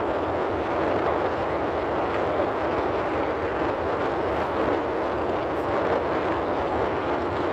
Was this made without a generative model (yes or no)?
yes